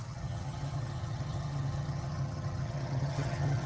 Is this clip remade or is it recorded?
remade